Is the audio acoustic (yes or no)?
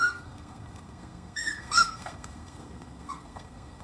no